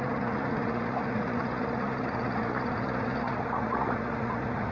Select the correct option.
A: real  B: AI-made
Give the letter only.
B